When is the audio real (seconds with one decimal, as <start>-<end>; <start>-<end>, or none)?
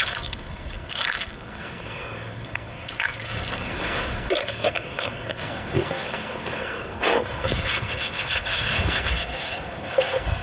none